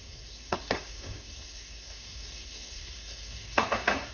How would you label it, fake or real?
fake